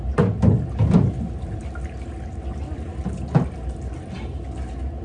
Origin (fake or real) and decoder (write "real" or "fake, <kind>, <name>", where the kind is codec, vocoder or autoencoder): real